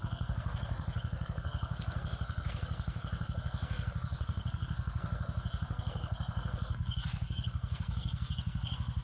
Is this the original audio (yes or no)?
no